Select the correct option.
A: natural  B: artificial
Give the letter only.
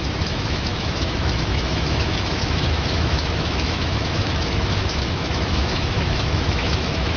B